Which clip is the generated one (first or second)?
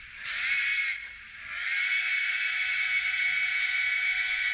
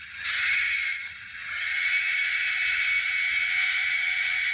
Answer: second